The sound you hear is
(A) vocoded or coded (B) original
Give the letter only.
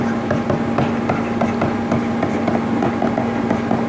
B